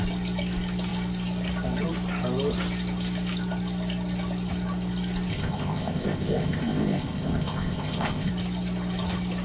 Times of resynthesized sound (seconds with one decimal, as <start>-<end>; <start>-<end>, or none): 5.3-8.3